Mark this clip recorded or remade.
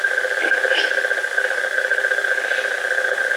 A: recorded